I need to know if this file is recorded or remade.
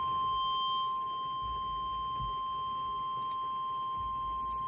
recorded